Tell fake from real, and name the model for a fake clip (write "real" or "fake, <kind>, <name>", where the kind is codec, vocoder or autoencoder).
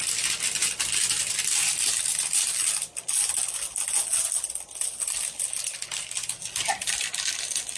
real